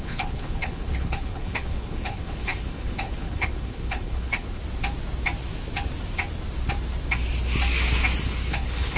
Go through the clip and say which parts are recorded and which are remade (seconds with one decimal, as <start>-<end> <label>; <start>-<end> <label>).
0.0-4.6 remade; 4.6-8.2 recorded; 8.2-9.0 remade